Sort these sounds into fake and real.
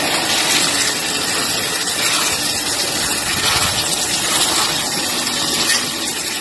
real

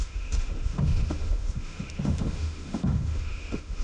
fake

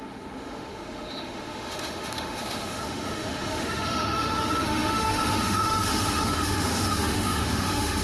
fake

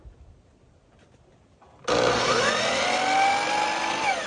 real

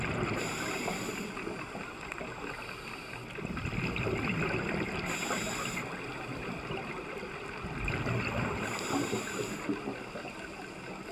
real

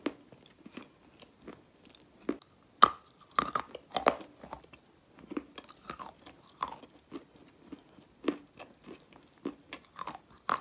real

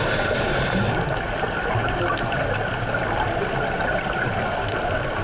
real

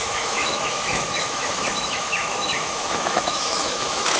fake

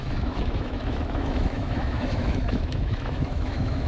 fake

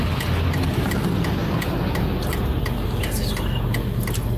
real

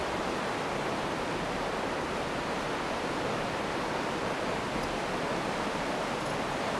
real